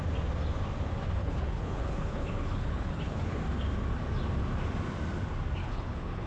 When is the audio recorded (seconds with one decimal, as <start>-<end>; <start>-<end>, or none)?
0.0-1.2; 3.4-5.6